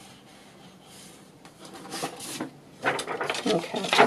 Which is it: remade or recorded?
recorded